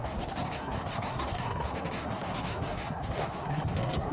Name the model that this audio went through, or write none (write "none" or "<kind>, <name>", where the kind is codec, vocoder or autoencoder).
codec, SNAC